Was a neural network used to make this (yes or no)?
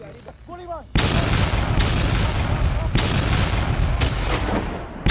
no